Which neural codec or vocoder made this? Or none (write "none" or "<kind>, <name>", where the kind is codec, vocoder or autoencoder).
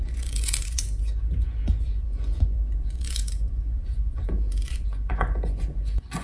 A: vocoder, Vocos